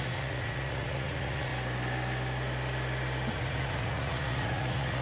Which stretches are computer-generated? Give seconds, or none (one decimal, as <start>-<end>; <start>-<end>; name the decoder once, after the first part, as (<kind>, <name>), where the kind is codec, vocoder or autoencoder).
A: 0.0-1.5 (vocoder, Vocos); 3.3-5.0